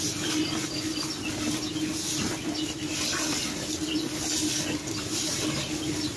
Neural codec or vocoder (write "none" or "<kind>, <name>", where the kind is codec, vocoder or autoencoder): none